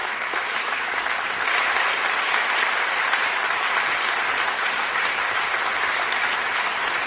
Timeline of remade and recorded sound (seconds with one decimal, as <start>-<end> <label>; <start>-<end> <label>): 0.0-0.9 remade; 0.9-7.1 recorded